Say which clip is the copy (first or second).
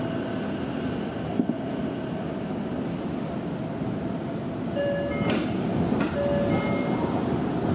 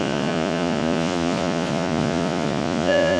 second